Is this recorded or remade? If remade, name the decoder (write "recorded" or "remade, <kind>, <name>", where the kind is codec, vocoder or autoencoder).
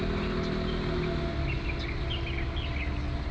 recorded